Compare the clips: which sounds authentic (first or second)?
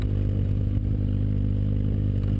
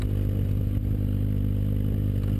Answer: second